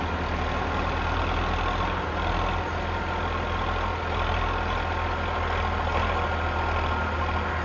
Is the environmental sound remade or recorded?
recorded